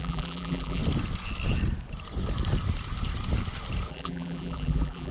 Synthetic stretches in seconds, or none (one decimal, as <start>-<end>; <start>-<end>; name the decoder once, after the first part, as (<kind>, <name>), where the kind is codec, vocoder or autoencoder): 0.0-0.8 (vocoder, BigVGAN v2); 3.9-5.1